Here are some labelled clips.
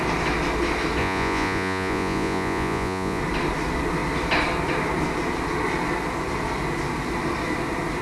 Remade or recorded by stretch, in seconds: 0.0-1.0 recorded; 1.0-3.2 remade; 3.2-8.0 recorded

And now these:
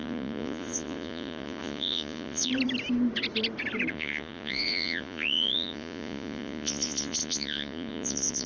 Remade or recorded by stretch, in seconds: 0.0-2.5 remade; 2.5-3.9 recorded; 3.9-8.5 remade